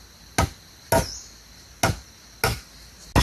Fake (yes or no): no